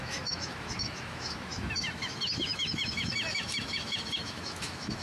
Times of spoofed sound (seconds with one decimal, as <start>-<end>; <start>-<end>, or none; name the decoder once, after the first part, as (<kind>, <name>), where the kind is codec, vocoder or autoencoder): 0.0-5.0 (autoencoder, DAC-VAE)